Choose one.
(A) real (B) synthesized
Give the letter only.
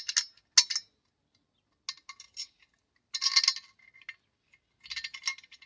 A